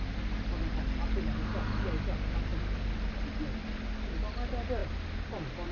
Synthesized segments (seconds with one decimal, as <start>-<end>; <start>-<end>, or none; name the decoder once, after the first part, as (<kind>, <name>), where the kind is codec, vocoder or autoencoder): none